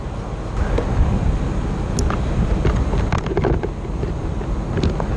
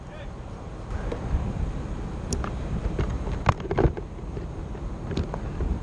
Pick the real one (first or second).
first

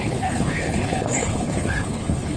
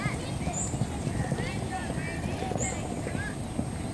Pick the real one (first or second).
second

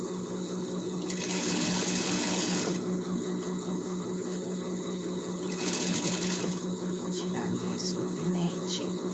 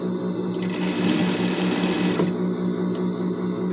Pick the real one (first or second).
second